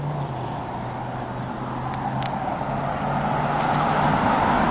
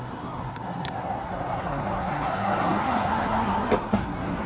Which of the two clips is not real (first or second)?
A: second